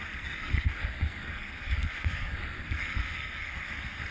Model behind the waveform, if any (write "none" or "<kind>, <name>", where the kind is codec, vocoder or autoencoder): codec, SNAC